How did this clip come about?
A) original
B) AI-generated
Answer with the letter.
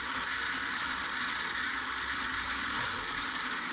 A